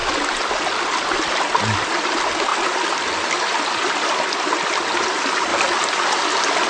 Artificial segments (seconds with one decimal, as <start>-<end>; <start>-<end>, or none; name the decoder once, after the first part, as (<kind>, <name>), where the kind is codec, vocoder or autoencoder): none